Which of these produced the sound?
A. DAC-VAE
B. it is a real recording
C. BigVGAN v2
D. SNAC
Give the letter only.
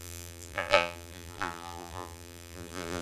C